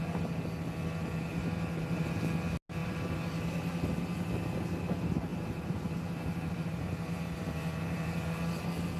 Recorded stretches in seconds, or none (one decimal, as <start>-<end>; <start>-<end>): 0.0-1.3; 2.2-2.8; 3.7-5.3; 8.4-9.0